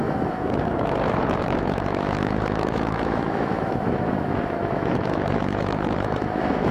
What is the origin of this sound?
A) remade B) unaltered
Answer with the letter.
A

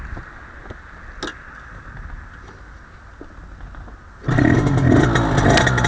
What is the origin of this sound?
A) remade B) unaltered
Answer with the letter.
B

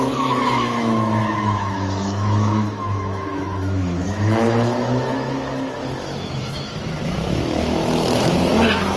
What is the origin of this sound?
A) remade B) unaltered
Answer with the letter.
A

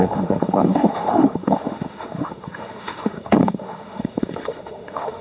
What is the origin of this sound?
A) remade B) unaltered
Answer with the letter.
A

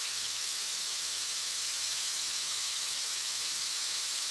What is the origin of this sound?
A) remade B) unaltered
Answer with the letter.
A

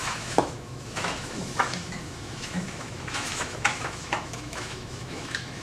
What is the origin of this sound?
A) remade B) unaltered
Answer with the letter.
A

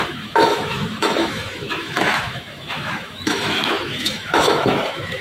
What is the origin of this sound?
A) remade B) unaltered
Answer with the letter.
A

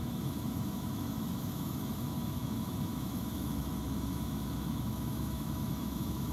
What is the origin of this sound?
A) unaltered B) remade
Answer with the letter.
B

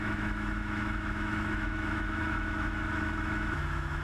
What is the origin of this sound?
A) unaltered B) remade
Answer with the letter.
B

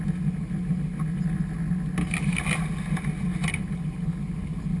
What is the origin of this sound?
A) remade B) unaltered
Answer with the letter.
B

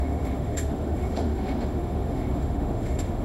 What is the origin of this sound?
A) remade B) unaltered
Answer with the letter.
A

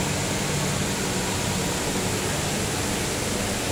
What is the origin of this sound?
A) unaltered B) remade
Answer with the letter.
A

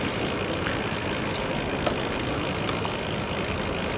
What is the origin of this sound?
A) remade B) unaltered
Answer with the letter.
B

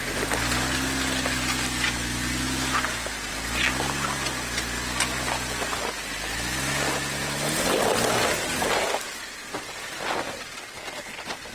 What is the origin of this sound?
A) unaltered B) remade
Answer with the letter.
A